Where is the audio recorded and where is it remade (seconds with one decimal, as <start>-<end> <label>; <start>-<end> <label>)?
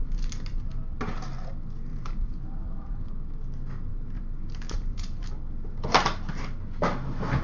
0.0-1.9 recorded; 1.9-3.1 remade; 3.1-3.9 recorded; 3.9-5.3 remade; 5.3-7.4 recorded